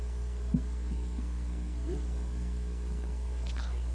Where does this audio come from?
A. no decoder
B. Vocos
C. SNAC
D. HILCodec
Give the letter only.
C